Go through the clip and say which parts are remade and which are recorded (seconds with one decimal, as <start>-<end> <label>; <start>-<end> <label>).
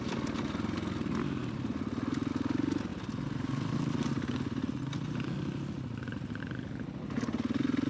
0.0-7.9 recorded